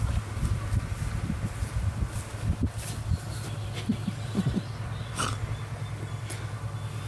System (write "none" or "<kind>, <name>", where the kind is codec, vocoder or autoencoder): none